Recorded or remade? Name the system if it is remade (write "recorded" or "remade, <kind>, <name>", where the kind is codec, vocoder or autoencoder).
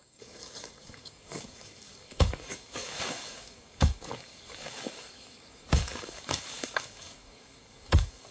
remade, codec, DAC